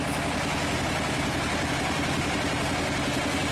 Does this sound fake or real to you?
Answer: real